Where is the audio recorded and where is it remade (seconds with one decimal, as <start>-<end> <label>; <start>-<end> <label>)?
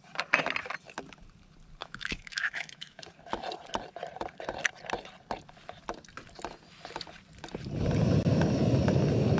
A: 0.0-1.8 recorded; 1.8-3.0 remade; 3.0-9.4 recorded